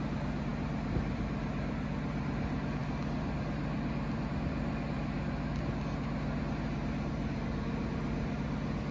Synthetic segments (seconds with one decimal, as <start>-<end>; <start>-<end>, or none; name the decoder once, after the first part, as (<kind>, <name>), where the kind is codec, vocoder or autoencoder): none